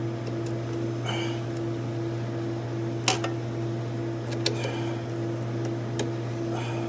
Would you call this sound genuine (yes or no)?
yes